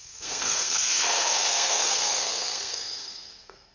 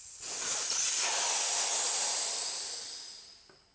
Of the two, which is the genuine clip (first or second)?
second